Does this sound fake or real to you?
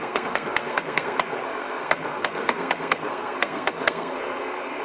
fake